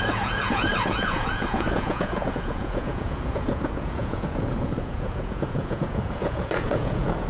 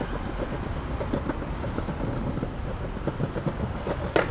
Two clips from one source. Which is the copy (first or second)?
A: first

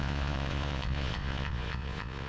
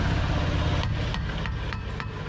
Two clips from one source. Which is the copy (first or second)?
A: first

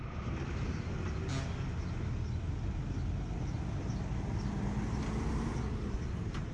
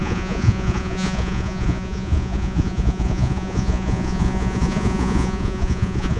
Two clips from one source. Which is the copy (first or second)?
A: second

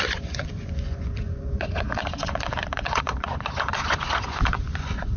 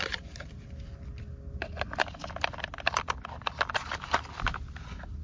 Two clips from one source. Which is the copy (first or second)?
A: first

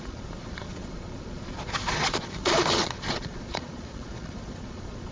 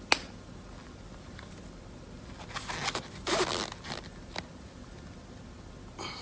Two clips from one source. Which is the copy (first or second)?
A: first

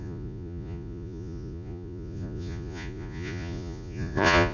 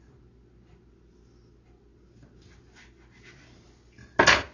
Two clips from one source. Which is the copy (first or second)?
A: first